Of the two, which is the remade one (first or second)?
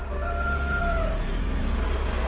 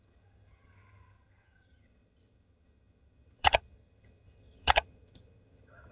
second